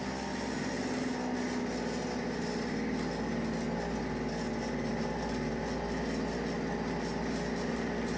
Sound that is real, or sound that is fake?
real